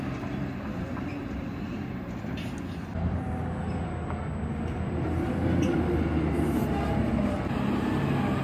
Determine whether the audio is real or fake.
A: real